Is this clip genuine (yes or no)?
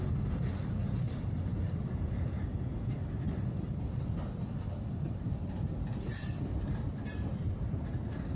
yes